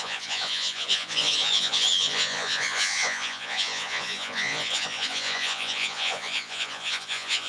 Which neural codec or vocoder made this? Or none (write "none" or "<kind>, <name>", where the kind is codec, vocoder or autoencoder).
vocoder, Vocos